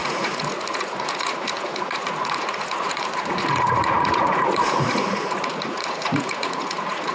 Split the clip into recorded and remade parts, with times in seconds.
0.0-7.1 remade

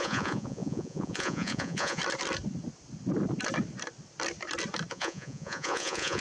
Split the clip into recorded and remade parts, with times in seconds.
0.0-2.0 remade; 2.0-4.9 recorded; 4.9-6.2 remade

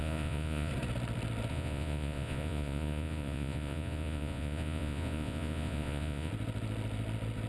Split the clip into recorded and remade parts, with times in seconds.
0.0-0.7 remade; 0.7-1.5 recorded; 1.5-6.3 remade; 6.3-7.5 recorded

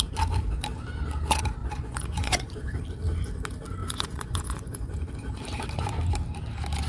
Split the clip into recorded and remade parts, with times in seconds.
0.0-1.6 recorded; 1.6-2.8 remade; 2.8-3.8 recorded; 3.8-5.1 remade; 5.1-6.9 recorded

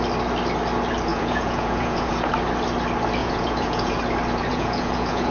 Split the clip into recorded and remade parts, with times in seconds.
0.0-1.1 recorded; 1.1-2.3 remade; 2.3-3.2 recorded; 3.2-4.0 remade; 4.0-4.5 recorded; 4.5-5.3 remade

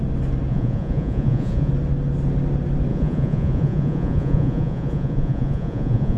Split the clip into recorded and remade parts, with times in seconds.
0.0-0.5 recorded; 0.5-1.7 remade; 1.7-2.9 recorded; 2.9-6.2 remade